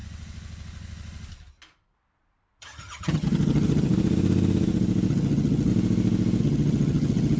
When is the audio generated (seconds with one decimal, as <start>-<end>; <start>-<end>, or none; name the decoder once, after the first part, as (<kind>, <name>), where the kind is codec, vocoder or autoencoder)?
2.6-3.9 (vocoder, HiFi-GAN); 5.1-5.7; 6.4-7.4